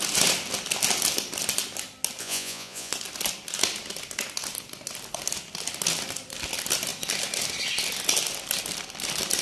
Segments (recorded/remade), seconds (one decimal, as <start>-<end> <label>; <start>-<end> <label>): 0.0-2.2 recorded; 2.2-2.9 remade; 2.9-9.4 recorded